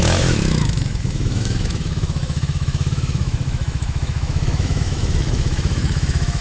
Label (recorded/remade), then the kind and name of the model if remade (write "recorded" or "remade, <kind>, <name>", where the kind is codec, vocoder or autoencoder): remade, autoencoder, DAC-VAE